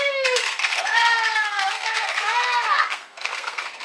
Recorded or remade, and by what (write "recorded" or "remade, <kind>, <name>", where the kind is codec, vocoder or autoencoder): remade, codec, SNAC